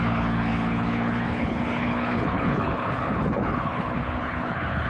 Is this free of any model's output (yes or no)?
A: no